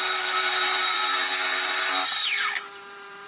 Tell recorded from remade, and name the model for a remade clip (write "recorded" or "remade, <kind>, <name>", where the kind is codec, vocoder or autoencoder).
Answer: remade, vocoder, BigVGAN v2